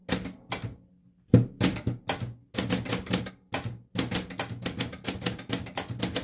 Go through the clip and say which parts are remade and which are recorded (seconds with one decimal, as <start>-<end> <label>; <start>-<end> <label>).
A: 0.0-6.2 recorded